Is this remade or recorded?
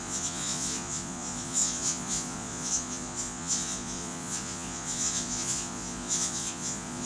remade